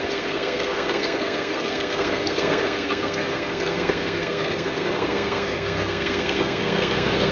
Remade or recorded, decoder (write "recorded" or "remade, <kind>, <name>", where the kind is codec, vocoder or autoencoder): remade, codec, SNAC